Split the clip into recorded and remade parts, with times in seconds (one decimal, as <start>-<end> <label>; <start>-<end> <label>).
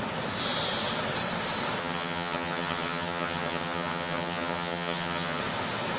0.0-1.8 recorded; 1.8-5.4 remade; 5.4-6.0 recorded